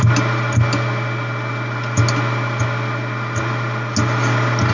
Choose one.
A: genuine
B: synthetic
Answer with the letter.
A